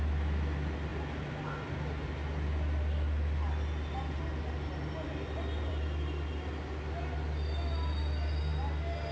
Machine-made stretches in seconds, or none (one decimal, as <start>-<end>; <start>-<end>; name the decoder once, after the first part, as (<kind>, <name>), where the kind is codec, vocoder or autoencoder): none